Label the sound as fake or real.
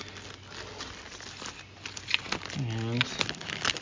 real